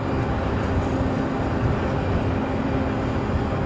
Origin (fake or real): real